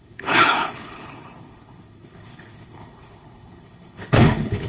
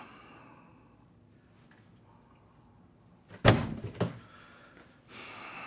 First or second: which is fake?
first